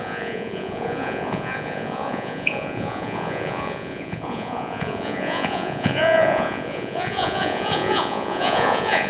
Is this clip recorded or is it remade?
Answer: remade